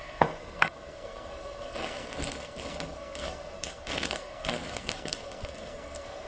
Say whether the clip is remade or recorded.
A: remade